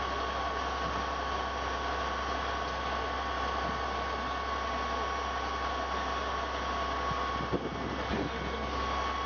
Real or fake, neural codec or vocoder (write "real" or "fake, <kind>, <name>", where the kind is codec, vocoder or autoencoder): real